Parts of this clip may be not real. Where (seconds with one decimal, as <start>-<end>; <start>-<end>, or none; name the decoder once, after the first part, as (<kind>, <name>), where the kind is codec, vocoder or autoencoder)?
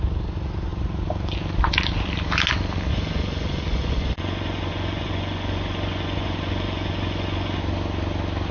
2.9-7.6 (vocoder, Vocos)